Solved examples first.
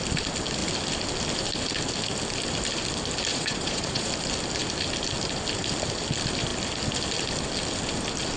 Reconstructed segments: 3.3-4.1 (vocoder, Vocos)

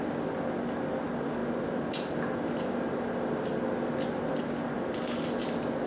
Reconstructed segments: none

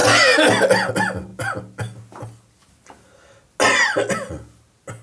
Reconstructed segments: none